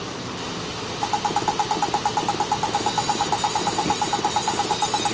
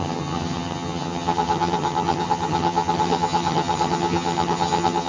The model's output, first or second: second